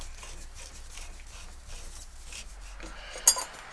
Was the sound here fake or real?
real